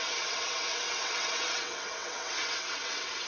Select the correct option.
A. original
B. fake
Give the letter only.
B